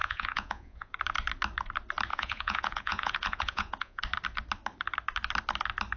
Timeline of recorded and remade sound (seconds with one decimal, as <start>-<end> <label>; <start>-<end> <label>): 0.0-0.9 remade; 0.9-2.1 recorded; 2.1-4.0 remade; 4.0-6.0 recorded

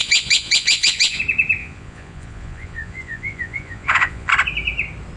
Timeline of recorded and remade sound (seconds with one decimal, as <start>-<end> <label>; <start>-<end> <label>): 0.0-1.2 remade; 1.2-1.6 recorded; 1.6-4.3 remade; 4.3-5.2 recorded

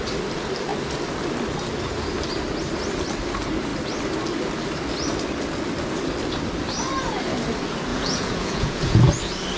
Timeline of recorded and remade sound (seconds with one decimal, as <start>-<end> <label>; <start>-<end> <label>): 0.0-7.9 recorded; 7.9-9.1 remade; 9.1-9.6 recorded

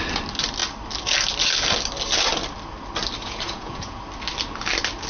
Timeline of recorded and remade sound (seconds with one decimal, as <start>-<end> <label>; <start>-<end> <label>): 0.0-3.2 recorded; 3.2-4.0 remade; 4.0-5.1 recorded

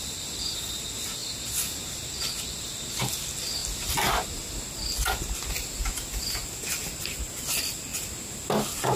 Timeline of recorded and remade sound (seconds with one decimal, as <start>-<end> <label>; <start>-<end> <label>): 0.0-9.0 recorded

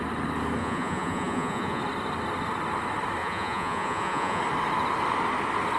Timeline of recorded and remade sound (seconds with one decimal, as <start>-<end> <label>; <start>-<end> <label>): 0.0-0.6 recorded; 0.6-1.8 remade; 1.8-3.2 recorded; 3.2-4.4 remade; 4.4-5.8 recorded